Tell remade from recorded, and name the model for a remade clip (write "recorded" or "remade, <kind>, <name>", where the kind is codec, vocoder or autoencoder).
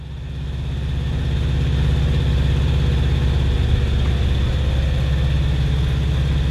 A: recorded